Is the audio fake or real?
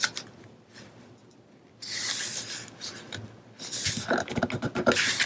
real